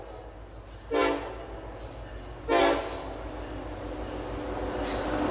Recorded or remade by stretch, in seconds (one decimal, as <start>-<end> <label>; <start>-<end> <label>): 0.0-5.3 recorded